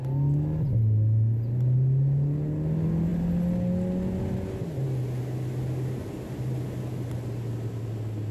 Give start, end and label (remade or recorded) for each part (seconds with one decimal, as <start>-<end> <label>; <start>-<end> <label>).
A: 0.0-8.3 recorded